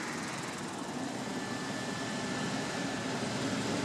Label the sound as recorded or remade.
remade